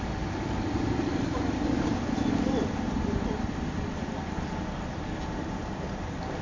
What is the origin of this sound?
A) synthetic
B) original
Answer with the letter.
B